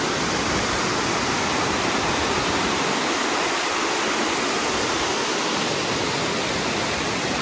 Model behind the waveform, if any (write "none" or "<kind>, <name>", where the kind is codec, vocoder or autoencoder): none